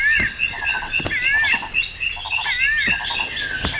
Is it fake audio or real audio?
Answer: real